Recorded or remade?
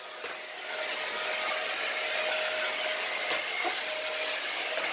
recorded